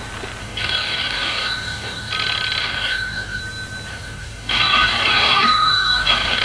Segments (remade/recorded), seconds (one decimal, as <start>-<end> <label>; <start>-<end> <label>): 0.0-0.4 recorded; 0.4-2.1 remade; 2.1-2.6 recorded; 2.6-3.4 remade; 3.4-3.9 recorded; 3.9-6.4 remade